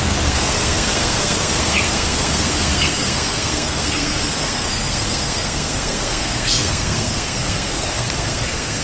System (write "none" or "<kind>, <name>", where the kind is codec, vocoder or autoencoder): codec, SNAC